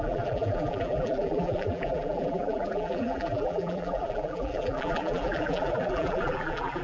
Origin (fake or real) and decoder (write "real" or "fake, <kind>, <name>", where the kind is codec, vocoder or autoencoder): fake, vocoder, BigVGAN v2